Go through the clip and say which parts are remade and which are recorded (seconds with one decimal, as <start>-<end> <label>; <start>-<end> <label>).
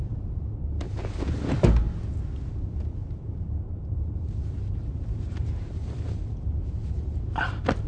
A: 0.0-3.0 recorded; 3.0-6.5 remade; 6.5-7.9 recorded